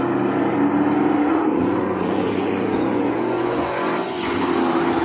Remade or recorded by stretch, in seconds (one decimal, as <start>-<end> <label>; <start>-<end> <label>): 0.0-1.3 recorded; 1.3-4.3 remade; 4.3-5.0 recorded